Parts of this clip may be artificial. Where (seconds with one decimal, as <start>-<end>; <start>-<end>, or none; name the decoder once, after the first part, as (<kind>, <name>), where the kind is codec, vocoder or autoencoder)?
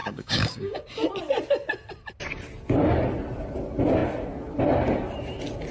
0.0-0.8 (codec, DAC)